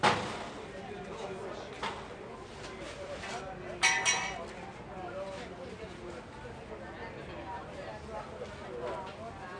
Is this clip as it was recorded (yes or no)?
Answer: yes